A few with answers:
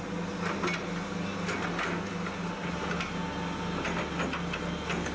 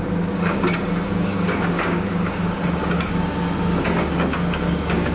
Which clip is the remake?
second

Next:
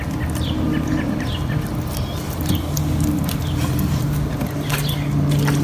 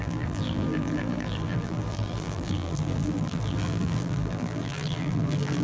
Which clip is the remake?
second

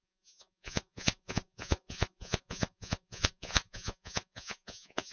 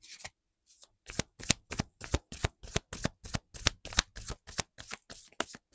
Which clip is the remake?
first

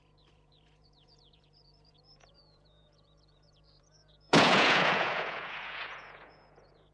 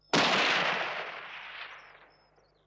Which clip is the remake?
first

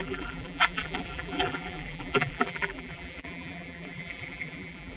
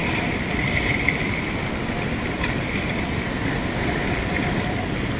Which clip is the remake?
first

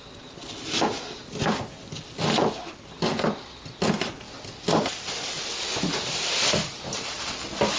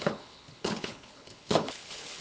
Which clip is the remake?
second